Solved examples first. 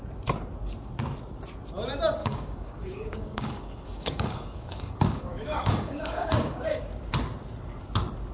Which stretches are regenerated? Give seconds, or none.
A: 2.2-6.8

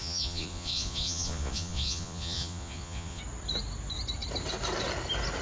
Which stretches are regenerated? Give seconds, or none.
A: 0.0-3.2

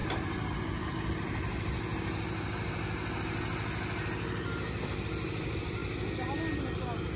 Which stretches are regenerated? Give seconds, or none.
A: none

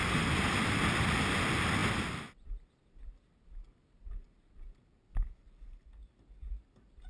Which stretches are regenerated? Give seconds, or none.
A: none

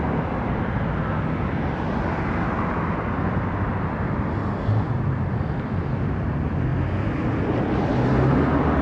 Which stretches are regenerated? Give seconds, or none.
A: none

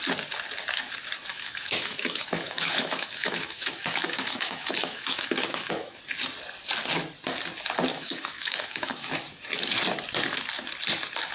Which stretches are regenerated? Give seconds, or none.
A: 1.3-6.0; 7.9-9.1